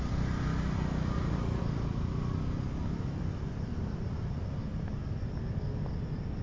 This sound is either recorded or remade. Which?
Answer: recorded